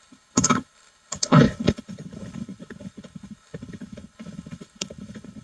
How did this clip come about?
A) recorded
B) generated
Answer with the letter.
B